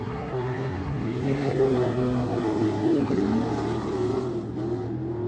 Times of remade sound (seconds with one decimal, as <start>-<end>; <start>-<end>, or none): 0.0-3.2